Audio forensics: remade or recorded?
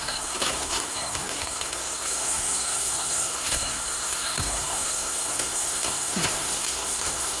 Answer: remade